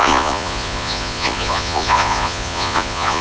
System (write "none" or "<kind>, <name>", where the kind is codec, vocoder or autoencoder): vocoder, Vocos